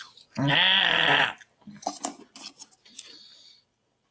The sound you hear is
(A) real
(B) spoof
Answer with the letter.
A